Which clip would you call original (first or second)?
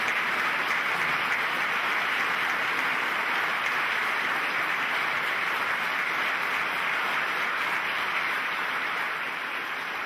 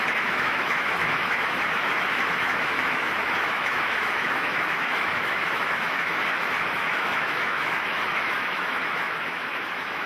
first